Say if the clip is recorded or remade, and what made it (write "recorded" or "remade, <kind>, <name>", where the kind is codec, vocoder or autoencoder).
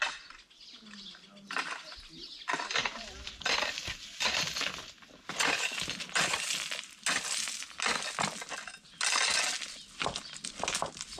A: recorded